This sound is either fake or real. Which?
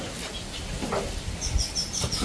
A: real